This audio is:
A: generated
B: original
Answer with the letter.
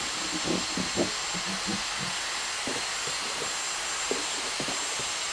B